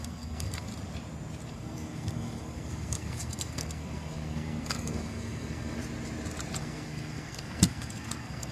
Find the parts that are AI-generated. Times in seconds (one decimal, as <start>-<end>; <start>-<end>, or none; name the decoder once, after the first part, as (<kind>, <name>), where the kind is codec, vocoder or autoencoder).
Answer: 0.0-0.7 (codec, SNAC); 1.5-5.8; 6.6-8.5